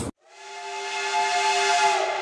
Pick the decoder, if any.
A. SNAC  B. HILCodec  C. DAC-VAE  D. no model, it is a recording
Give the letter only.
D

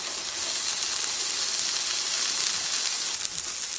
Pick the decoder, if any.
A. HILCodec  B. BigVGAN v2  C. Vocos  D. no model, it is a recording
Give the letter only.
D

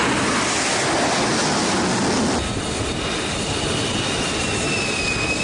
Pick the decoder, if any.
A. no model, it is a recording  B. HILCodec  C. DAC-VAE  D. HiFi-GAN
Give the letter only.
A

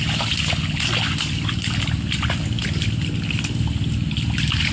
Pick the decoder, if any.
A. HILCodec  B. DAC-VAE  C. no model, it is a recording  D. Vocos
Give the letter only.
C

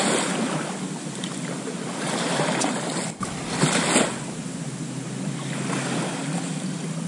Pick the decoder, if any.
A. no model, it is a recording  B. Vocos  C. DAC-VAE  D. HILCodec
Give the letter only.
A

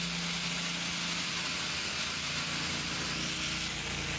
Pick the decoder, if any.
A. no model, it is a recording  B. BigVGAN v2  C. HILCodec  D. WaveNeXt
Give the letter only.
A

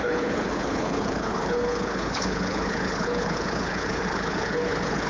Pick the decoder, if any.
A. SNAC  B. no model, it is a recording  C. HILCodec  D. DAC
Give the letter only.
C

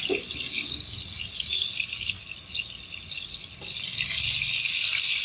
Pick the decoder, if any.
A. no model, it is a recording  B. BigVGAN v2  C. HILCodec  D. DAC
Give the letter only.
A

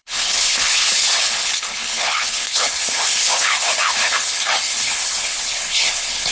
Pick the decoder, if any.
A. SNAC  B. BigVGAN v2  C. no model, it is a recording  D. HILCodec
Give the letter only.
D